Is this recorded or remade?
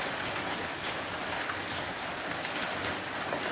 recorded